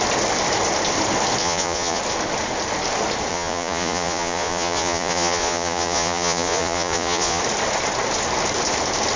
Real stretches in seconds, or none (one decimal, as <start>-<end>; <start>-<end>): 0.0-1.4; 2.0-3.3; 7.4-9.2